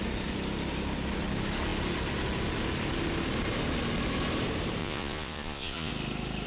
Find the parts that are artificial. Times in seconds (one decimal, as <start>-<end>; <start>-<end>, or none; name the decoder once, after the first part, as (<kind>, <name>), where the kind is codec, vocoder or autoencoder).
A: 4.8-5.9 (vocoder, Vocos)